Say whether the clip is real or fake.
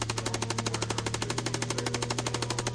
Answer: real